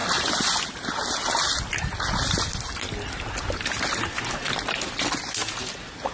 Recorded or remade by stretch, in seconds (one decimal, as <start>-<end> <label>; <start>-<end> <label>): 0.0-6.1 recorded